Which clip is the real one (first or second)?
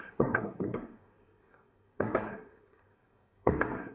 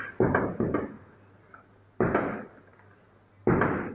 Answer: second